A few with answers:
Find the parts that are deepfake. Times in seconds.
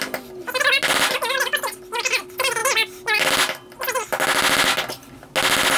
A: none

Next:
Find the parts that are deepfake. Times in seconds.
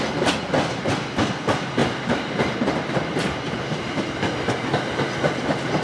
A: 1.8-2.6 (vocoder, BigVGAN v2)